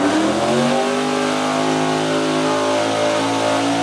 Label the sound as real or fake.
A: real